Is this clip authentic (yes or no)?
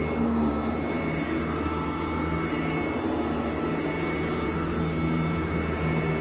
yes